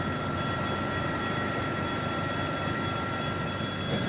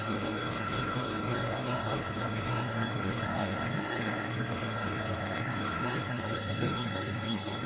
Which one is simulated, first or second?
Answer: second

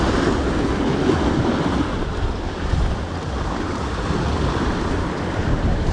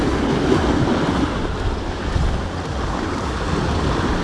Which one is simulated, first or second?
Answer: first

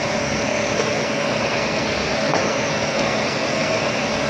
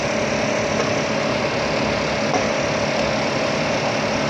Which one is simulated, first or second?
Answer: first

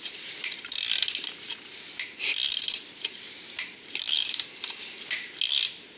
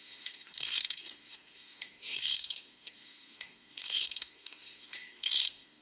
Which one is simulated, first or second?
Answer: second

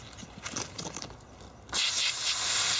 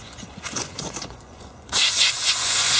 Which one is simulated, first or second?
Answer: second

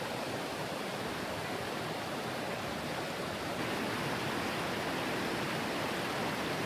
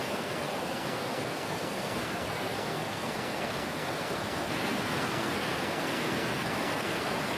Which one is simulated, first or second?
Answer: second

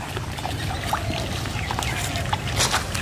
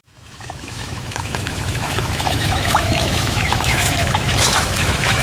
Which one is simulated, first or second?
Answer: second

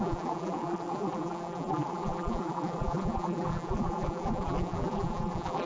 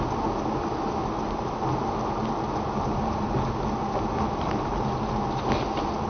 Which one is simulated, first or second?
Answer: first